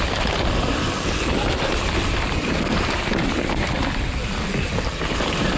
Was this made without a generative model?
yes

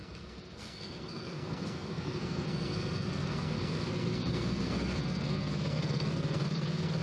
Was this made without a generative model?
no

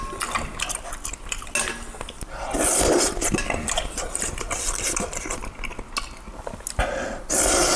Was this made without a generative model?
yes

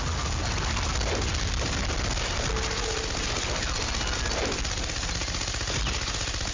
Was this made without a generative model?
yes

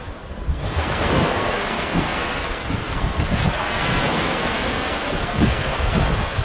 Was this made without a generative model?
no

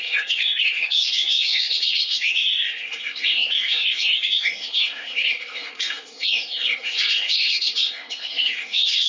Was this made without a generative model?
no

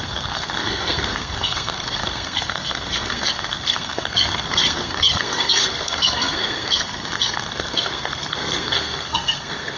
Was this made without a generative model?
no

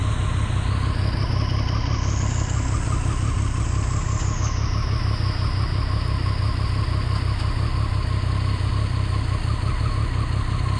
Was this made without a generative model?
yes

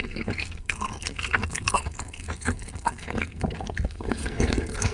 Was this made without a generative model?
no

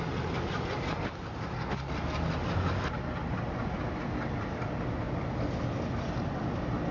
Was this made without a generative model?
yes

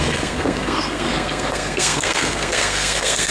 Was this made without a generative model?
no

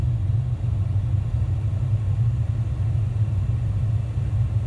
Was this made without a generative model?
yes